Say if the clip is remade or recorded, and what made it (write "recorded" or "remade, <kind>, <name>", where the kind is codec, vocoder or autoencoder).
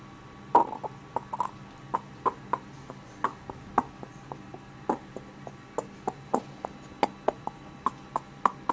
recorded